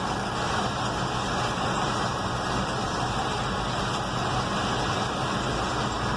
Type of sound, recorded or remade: recorded